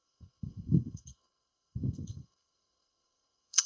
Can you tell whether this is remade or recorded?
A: remade